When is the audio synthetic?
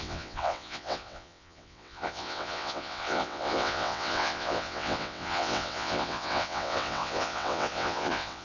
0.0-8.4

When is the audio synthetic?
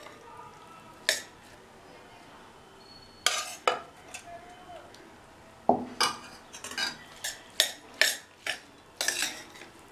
none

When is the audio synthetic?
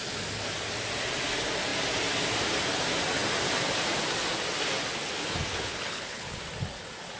5.5-6.4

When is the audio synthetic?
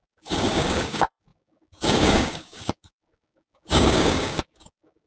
0.0-5.1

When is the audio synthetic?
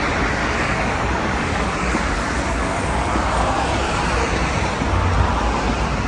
0.4-4.0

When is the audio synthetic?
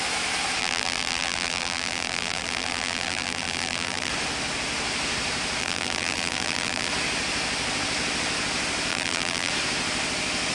0.6-4.1; 5.6-6.9; 8.9-9.5